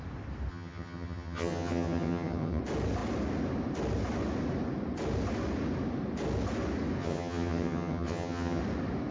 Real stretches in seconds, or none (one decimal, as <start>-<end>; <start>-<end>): 0.0-0.5; 2.6-7.0; 8.6-9.1